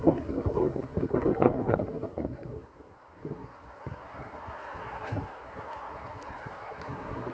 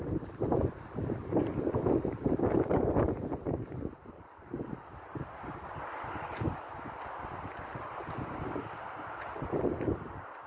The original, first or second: second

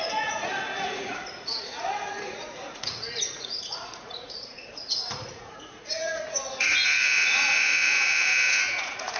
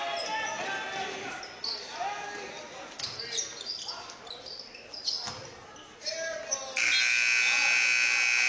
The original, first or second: second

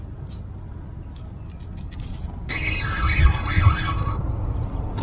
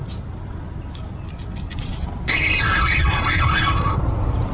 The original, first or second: first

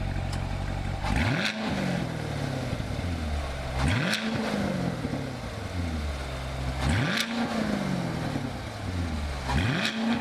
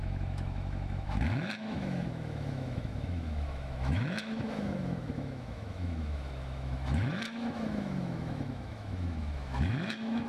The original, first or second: first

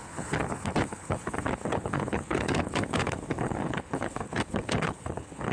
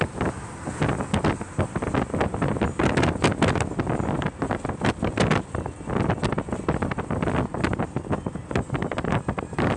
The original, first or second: second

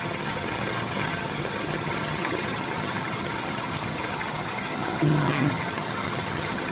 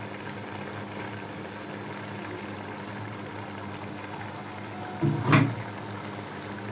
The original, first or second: second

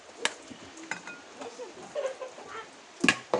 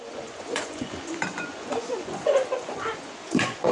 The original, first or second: first